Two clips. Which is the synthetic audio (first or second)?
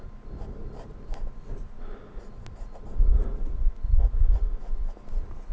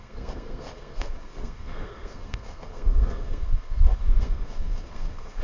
second